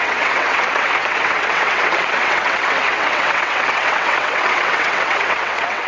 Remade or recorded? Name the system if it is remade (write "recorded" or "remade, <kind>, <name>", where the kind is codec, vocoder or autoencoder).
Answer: remade, vocoder, WaveNeXt